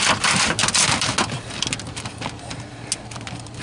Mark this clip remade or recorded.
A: recorded